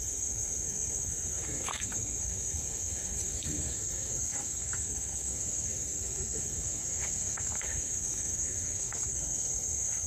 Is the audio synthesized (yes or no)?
yes